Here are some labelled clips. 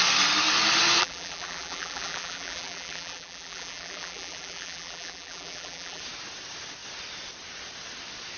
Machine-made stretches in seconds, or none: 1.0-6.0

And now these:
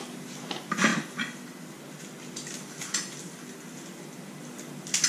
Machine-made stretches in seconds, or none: none

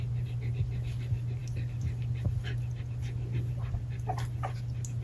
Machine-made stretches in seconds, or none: none

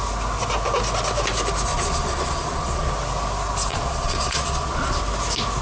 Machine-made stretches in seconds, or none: 1.7-2.9; 3.7-5.0

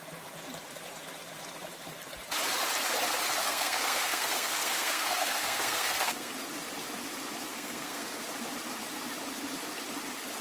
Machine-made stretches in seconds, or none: 3.4-6.3; 7.5-8.2

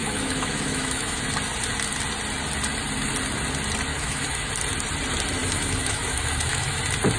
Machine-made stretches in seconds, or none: 0.0-1.2; 3.9-4.5; 5.4-6.8

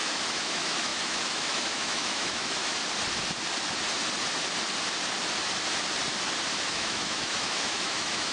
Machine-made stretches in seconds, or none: 0.0-2.8; 6.7-8.3

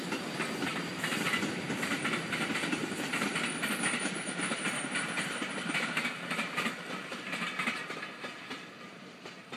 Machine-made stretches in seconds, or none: 0.7-1.3; 2.8-7.5